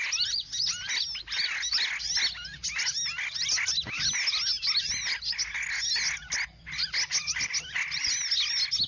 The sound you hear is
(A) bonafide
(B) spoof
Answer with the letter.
A